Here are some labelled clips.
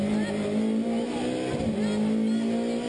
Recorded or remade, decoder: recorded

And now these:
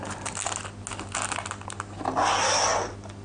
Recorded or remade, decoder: recorded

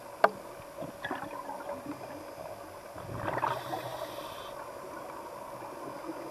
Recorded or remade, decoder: recorded